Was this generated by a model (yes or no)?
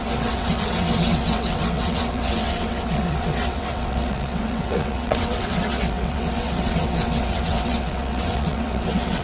yes